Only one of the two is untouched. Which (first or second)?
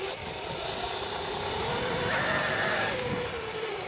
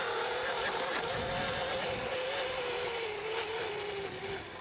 second